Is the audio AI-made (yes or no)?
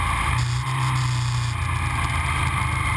no